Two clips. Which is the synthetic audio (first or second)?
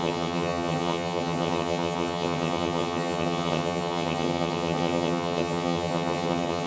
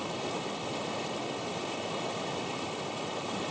first